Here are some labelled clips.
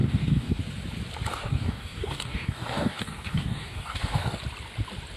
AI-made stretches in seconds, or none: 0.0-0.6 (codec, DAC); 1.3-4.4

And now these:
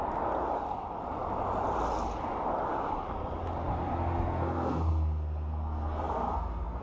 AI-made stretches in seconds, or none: 3.7-6.8 (codec, SNAC)